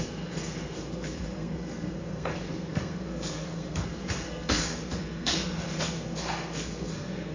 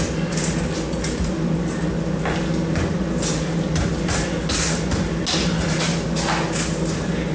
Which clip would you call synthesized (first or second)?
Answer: first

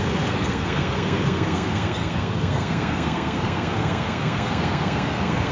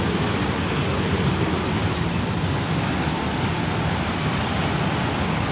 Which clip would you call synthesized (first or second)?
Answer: first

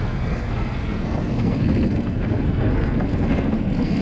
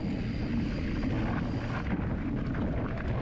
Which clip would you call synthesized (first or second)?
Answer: first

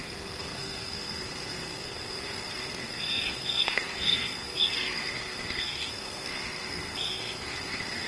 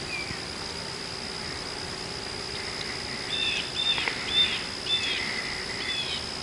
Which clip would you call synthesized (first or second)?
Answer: first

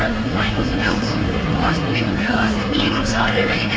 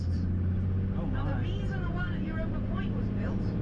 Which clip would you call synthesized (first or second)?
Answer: first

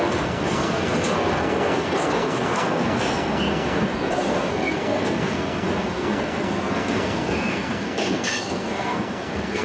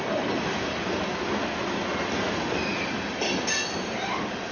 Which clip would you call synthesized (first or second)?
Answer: first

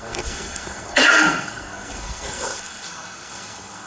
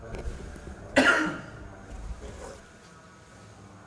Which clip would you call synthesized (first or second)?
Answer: first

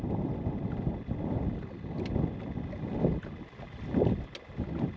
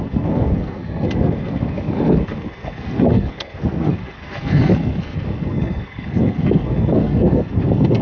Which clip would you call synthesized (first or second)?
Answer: second